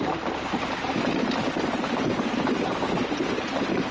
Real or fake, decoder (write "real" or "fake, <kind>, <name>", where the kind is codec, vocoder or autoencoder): real